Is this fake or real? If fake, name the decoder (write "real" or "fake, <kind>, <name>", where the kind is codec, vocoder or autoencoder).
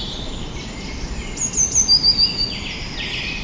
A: real